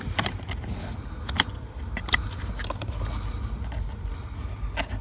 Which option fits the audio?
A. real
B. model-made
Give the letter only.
A